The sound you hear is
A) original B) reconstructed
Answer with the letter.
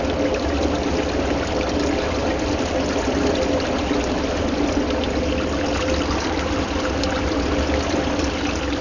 A